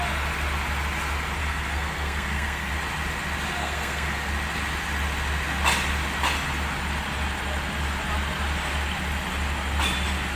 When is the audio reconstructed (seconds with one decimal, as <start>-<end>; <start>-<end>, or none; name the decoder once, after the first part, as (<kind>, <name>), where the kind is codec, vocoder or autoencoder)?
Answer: 1.4-2.7 (codec, SNAC); 3.6-4.3